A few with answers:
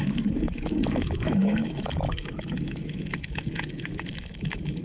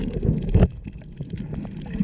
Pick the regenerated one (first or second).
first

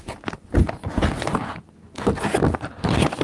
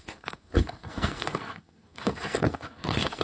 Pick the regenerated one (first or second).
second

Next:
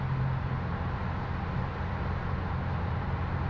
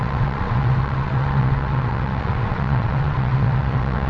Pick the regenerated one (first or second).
second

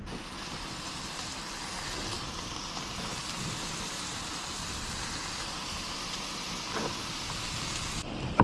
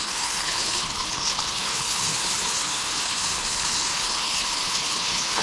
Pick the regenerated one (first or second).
second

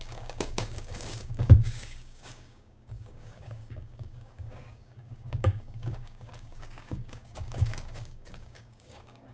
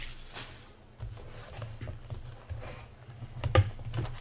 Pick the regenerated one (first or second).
first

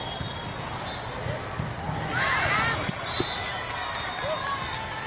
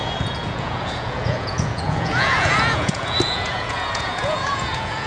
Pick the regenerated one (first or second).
second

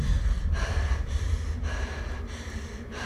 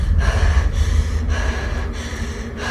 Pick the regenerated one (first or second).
first